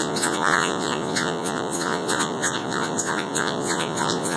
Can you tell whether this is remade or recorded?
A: remade